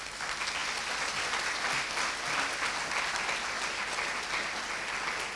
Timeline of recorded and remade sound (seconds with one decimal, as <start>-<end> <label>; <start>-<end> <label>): 0.0-5.4 recorded